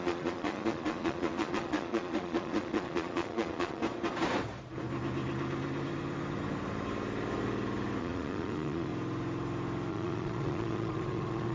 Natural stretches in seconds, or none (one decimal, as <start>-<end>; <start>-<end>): 3.8-8.0; 8.9-9.9

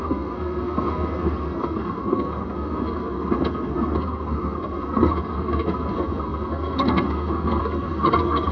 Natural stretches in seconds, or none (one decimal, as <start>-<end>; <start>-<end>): none

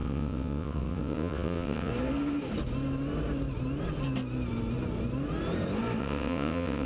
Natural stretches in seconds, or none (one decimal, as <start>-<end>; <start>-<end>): 1.9-6.0

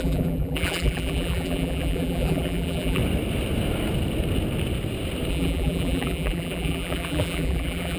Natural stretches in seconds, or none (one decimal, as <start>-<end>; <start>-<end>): 3.0-5.3

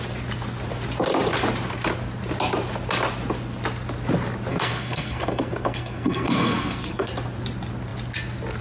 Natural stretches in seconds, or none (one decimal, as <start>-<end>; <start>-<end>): 0.0-4.5; 7.1-8.6

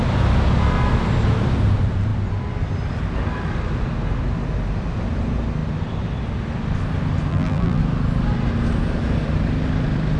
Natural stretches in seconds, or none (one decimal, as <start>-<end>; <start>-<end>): 0.0-7.3; 7.8-10.2

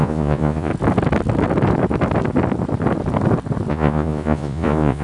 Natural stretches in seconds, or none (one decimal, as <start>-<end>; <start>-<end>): 0.7-3.7

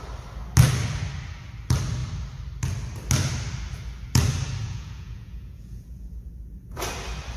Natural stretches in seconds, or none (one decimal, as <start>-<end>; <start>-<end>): 0.0-4.6; 6.3-7.4